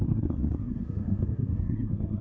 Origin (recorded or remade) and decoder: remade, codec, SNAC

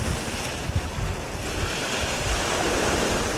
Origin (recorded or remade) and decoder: recorded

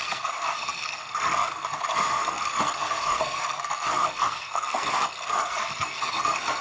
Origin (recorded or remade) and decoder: remade, codec, SNAC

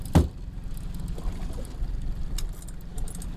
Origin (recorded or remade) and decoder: recorded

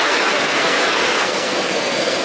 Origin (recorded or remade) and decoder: remade, codec, SNAC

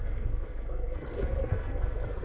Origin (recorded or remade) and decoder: remade, codec, SNAC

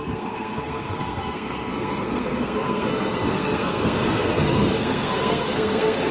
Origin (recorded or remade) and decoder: remade, codec, SNAC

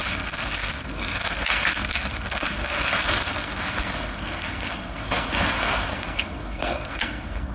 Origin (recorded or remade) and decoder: remade, codec, SNAC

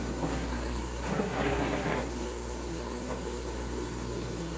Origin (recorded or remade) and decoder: remade, codec, SNAC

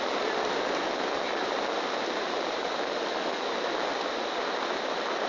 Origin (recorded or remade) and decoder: recorded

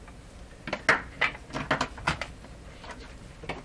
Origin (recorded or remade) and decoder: recorded